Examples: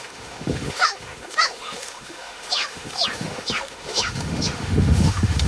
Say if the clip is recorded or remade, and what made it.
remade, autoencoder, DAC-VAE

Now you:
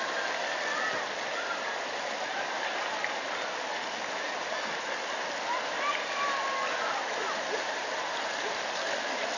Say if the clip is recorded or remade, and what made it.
recorded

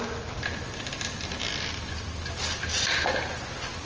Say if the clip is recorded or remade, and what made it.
recorded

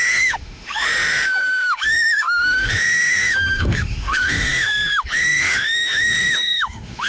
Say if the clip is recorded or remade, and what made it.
remade, autoencoder, DAC-VAE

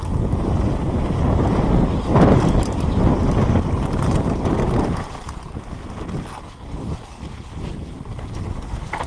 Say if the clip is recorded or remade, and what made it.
recorded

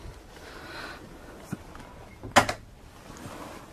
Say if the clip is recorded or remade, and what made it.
recorded